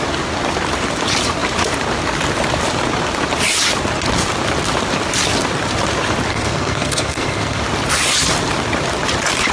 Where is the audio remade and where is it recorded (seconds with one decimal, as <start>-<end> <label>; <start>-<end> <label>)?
0.0-6.3 recorded; 6.3-7.6 remade; 7.6-9.5 recorded

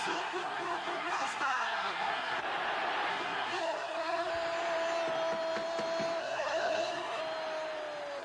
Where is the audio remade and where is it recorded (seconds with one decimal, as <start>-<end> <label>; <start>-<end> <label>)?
0.0-2.4 remade; 2.4-3.1 recorded; 3.1-4.3 remade; 4.3-6.2 recorded; 6.2-7.2 remade; 7.2-8.2 recorded

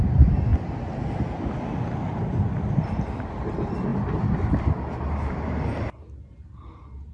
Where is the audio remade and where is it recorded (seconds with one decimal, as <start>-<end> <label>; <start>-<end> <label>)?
0.0-7.1 recorded

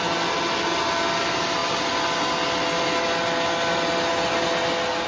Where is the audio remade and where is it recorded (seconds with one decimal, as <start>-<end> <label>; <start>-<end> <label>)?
0.0-5.1 recorded

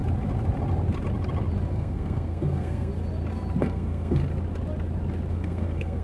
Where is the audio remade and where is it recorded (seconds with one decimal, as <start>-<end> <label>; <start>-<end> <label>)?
0.0-1.7 recorded; 1.7-2.9 remade; 2.9-3.6 recorded; 3.6-4.2 remade; 4.2-5.3 recorded; 5.3-6.0 remade

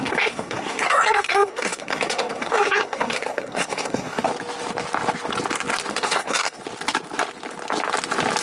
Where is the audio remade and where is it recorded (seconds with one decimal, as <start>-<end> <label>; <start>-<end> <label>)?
0.0-4.3 remade; 4.3-5.9 recorded; 5.9-6.6 remade; 6.6-8.4 recorded

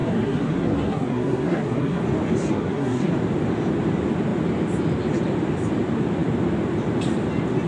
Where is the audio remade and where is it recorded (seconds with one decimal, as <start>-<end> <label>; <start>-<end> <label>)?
0.0-2.0 remade; 2.0-2.5 recorded; 2.5-3.1 remade; 3.1-7.7 recorded

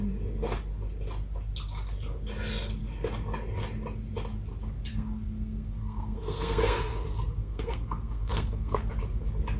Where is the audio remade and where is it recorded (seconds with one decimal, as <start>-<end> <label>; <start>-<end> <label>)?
0.0-4.9 recorded; 4.9-8.9 remade; 8.9-9.6 recorded